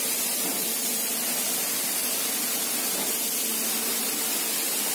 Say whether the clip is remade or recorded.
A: recorded